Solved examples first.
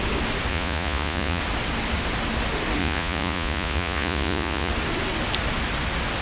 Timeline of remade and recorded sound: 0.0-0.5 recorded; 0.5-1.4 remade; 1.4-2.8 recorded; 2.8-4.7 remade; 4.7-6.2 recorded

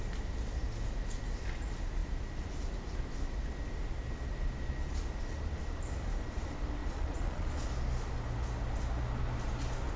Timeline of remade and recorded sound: 0.0-6.8 recorded; 6.8-7.7 remade; 7.7-10.0 recorded

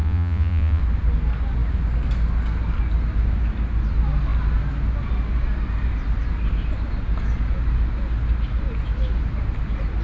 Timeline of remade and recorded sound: 0.0-0.8 remade; 0.8-10.0 recorded

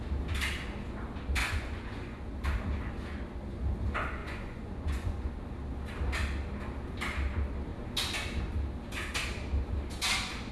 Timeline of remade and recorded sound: 0.0-1.4 recorded; 1.4-2.2 remade; 2.2-4.2 recorded; 4.2-5.3 remade; 5.3-10.5 recorded